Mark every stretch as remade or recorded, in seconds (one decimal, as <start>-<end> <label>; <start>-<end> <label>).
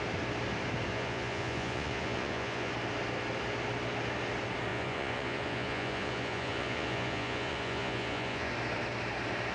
0.0-0.9 recorded; 0.9-2.7 remade; 2.7-4.7 recorded; 4.7-8.5 remade; 8.5-9.5 recorded